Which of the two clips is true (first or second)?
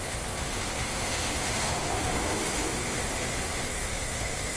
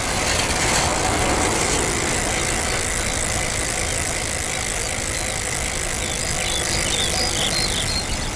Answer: second